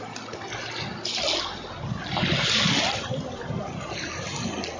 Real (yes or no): yes